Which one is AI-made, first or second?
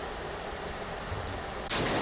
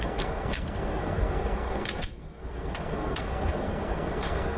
second